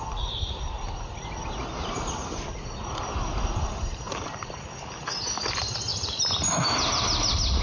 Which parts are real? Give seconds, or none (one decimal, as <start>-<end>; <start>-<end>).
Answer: 0.0-1.8; 5.1-7.6